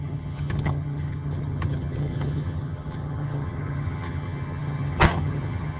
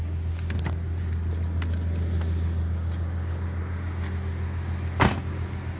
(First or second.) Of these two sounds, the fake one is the first